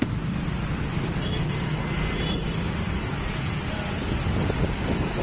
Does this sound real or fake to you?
real